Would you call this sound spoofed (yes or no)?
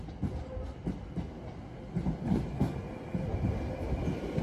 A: no